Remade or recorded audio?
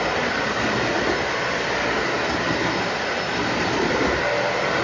recorded